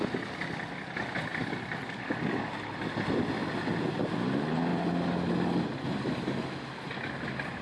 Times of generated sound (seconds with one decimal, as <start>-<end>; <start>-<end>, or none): none